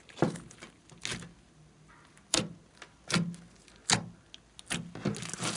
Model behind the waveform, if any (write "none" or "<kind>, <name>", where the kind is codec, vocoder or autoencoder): none